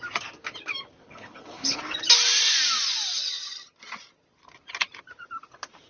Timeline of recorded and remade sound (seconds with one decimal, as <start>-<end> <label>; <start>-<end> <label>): 0.0-1.0 recorded; 1.0-1.8 remade; 1.8-5.9 recorded